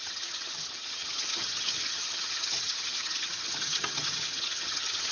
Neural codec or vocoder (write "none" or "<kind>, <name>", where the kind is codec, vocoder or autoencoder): vocoder, HiFi-GAN